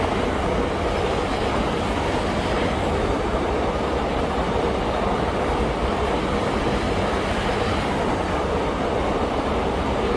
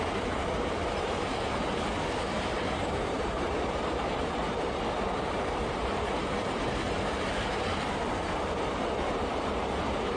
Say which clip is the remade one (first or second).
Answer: second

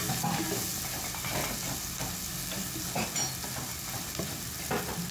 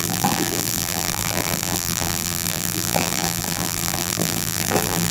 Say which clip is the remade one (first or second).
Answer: second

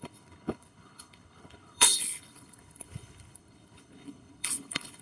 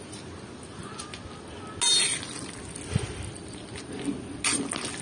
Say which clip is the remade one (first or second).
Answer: first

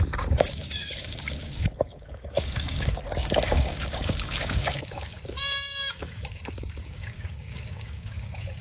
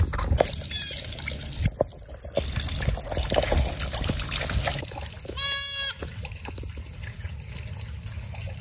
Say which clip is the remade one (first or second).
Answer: first